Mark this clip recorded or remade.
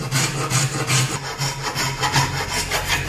recorded